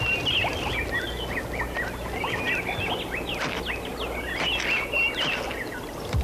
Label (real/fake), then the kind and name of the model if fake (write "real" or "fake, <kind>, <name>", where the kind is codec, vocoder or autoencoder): real